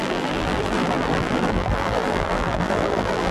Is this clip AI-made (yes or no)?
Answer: yes